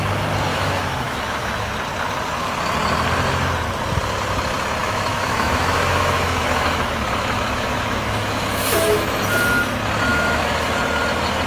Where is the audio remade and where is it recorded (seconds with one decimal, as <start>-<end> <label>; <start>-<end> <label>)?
0.0-0.5 recorded; 0.5-1.7 remade; 1.7-4.8 recorded; 4.8-9.2 remade; 9.2-10.1 recorded; 10.1-10.8 remade; 10.8-11.5 recorded